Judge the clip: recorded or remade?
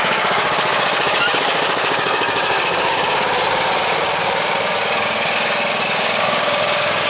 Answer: remade